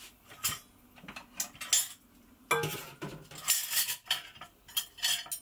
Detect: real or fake real